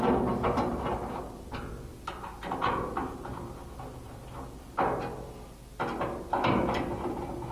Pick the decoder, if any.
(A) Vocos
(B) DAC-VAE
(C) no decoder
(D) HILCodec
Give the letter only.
C